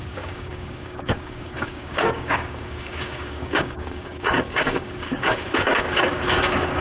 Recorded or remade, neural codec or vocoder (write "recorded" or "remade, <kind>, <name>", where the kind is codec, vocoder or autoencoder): remade, codec, DAC